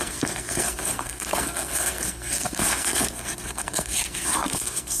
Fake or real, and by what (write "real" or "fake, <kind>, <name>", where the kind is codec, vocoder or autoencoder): fake, codec, SNAC